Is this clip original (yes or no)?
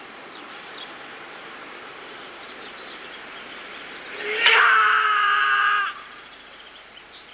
no